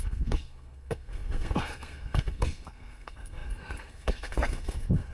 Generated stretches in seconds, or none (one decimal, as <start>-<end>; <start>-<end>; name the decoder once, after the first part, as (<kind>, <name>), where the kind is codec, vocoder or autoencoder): 0.0-5.1 (codec, SNAC)